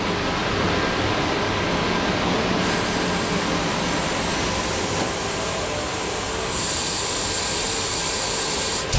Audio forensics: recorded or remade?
recorded